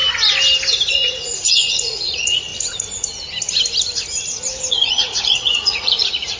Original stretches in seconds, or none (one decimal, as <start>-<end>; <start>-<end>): 0.0-0.9; 2.5-4.7